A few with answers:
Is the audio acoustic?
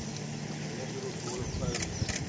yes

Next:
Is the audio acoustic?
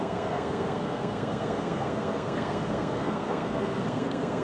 no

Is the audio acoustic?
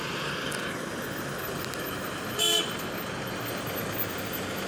yes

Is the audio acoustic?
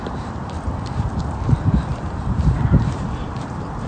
no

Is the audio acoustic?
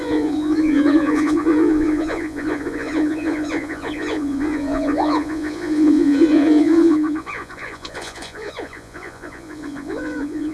no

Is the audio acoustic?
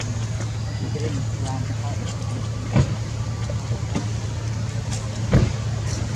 yes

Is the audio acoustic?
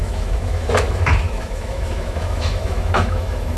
no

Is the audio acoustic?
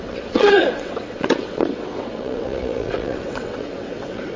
no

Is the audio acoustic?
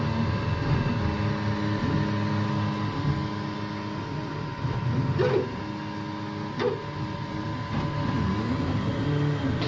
yes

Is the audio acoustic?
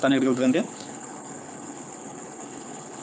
no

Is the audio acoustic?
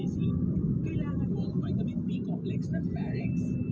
yes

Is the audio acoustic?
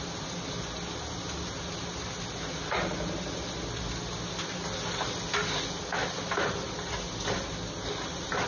yes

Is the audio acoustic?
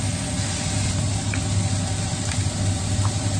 yes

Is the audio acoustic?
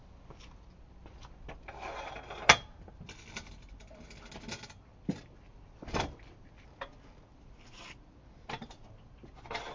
yes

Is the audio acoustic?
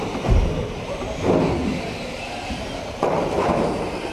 yes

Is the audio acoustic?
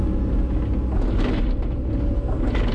yes